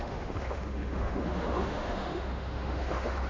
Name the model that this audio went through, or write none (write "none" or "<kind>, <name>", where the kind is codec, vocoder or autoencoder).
autoencoder, DAC-VAE